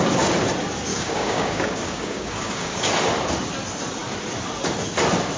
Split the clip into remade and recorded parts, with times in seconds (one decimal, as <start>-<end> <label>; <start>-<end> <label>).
0.0-0.9 recorded; 0.9-2.9 remade; 2.9-5.4 recorded